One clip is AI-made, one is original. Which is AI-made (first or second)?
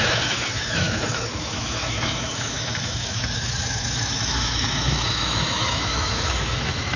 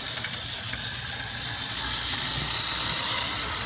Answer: first